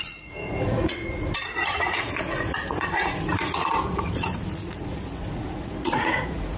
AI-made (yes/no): yes